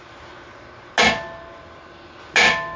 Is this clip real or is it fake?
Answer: real